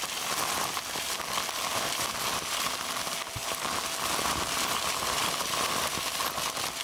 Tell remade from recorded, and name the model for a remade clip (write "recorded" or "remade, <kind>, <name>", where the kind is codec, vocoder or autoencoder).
recorded